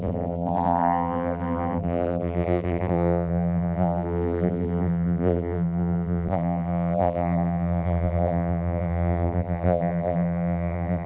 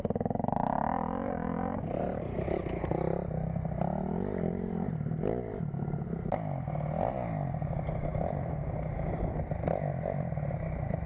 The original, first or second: second